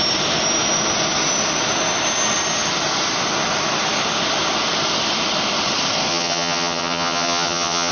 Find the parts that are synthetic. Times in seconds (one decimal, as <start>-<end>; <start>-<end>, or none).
6.1-7.9